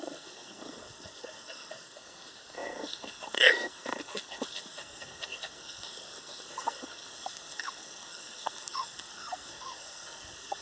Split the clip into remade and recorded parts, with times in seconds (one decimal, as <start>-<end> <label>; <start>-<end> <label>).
0.0-10.6 remade